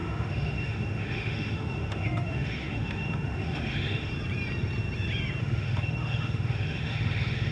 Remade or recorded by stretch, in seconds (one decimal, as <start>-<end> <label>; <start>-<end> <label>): 0.0-4.1 remade; 4.1-5.4 recorded; 5.4-7.5 remade